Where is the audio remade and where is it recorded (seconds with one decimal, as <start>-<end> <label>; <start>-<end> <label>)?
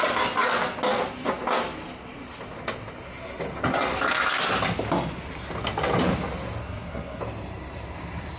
0.0-6.6 recorded; 6.6-7.2 remade; 7.2-8.4 recorded